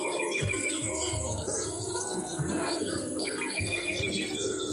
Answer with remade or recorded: remade